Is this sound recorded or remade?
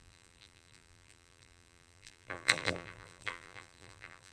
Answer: remade